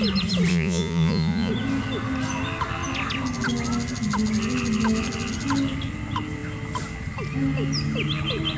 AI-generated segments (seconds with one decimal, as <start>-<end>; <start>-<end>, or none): 0.5-1.5